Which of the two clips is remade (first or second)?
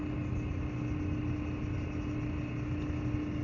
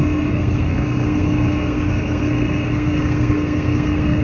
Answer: second